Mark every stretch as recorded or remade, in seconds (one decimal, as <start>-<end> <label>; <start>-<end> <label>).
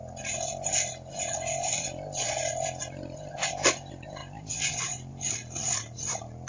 0.0-6.5 recorded